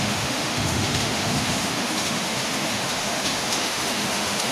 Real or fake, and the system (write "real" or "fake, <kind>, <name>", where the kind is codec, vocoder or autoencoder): fake, autoencoder, DAC-VAE